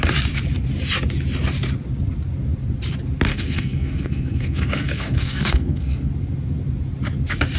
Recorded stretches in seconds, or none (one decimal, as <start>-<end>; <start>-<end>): 0.0-3.3; 6.1-7.6